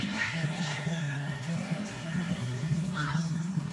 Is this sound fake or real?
fake